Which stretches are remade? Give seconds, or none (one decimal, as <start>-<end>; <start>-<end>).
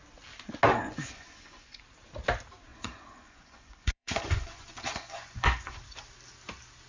0.7-1.8; 2.7-5.8